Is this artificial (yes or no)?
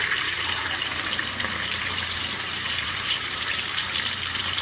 yes